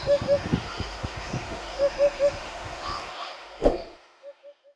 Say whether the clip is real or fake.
fake